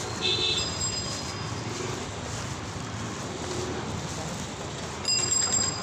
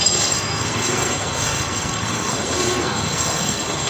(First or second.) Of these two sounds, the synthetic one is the second